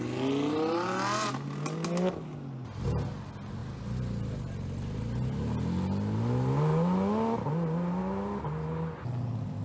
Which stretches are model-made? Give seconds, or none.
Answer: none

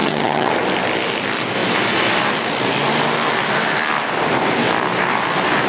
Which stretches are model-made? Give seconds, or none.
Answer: 0.0-0.5 (vocoder, HiFi-GAN)

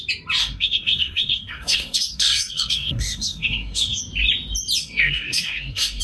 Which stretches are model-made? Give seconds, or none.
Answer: 0.4-4.0 (codec, SNAC); 4.8-6.0

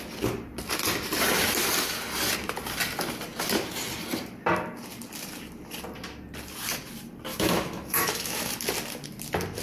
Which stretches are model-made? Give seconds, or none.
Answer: 7.3-8.5 (autoencoder, DAC-VAE)

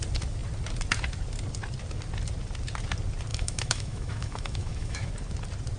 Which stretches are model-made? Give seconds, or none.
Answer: 3.3-5.1 (autoencoder, DAC-VAE)